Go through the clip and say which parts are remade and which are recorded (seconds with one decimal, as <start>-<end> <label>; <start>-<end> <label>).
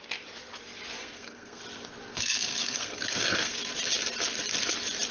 0.0-1.0 recorded; 1.0-1.6 remade; 1.6-2.1 recorded; 2.1-3.6 remade; 3.6-5.1 recorded